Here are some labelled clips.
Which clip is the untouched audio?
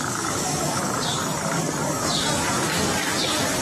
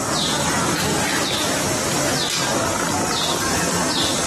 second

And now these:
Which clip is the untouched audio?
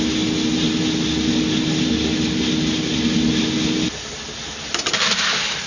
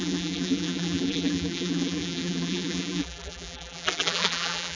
first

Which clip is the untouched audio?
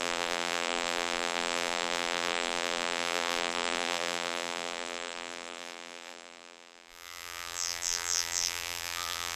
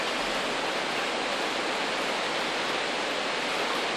second